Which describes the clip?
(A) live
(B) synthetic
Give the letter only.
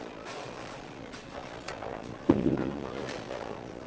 B